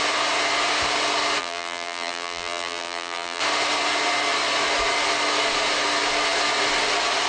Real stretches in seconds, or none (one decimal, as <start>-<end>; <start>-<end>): 0.0-1.4; 3.4-7.3

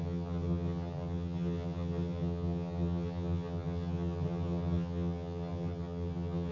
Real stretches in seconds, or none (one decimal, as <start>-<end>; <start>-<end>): none

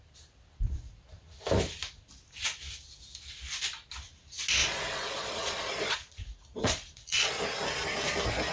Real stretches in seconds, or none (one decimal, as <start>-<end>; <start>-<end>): 0.0-4.6; 7.3-8.5